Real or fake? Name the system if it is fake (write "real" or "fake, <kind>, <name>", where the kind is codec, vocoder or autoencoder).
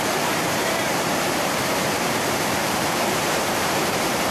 fake, vocoder, BigVGAN v2